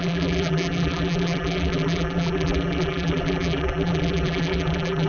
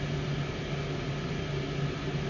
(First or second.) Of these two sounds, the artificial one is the first